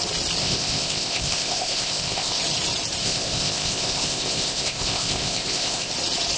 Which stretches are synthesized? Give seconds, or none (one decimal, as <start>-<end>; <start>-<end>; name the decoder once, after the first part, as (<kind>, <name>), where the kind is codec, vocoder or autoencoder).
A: 0.4-2.4 (codec, ZipCodec); 3.0-5.9